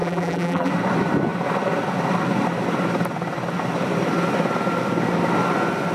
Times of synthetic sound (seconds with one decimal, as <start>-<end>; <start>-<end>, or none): 0.0-0.7